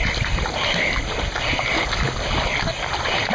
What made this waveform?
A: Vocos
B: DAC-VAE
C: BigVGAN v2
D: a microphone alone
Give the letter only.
D